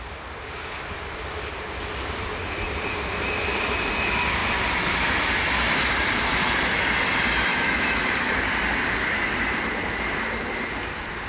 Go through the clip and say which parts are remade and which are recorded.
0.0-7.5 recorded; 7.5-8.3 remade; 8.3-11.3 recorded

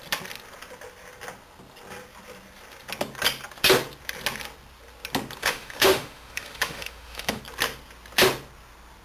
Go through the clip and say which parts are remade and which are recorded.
0.0-5.4 recorded; 5.4-7.4 remade; 7.4-9.0 recorded